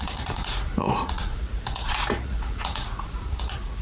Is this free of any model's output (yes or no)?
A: no